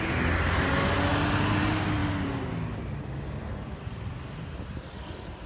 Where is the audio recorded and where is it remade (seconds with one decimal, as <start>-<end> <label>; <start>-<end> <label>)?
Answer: 0.0-5.5 recorded